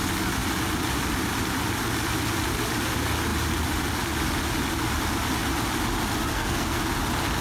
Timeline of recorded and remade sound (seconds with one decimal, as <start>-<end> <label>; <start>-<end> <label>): 0.0-6.3 recorded; 6.3-6.8 remade; 6.8-7.4 recorded